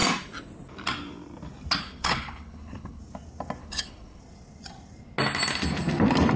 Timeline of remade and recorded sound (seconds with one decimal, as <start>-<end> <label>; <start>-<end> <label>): 0.0-1.8 recorded; 1.8-3.0 remade; 3.0-3.6 recorded; 3.6-4.2 remade; 4.2-6.4 recorded